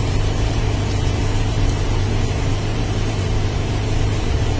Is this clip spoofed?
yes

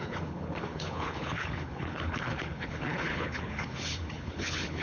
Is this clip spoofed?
yes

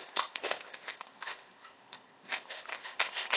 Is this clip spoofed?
yes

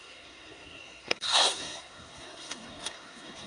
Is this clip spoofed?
yes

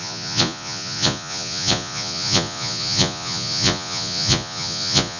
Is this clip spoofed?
yes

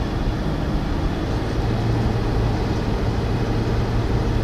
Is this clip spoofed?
no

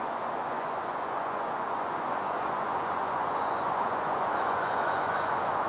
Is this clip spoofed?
yes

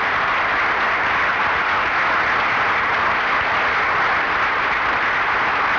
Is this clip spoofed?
no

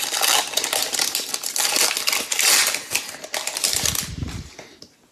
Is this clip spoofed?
no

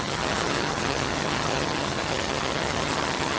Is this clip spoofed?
yes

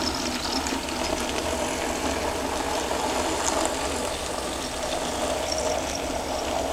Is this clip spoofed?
no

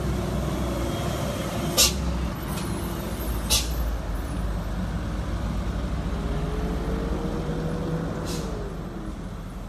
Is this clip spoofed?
no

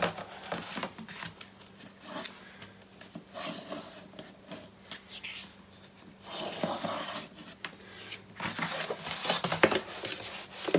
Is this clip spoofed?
no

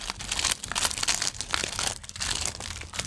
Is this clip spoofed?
no